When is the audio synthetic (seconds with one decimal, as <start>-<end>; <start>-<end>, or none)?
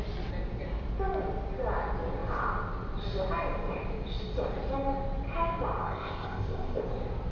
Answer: 5.8-6.8